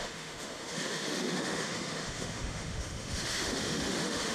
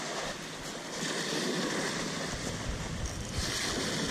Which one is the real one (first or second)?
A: second